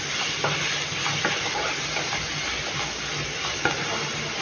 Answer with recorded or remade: recorded